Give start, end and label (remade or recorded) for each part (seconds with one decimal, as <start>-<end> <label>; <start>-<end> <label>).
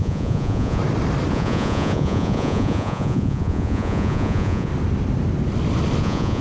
0.0-0.8 remade; 0.8-1.3 recorded; 1.3-4.7 remade; 4.7-6.0 recorded; 6.0-6.4 remade